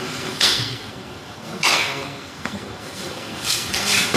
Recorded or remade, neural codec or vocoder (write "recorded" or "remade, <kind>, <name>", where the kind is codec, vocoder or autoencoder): remade, codec, SNAC